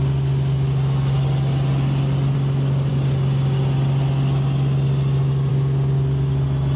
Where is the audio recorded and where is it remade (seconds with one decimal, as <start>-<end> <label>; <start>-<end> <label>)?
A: 0.0-6.8 recorded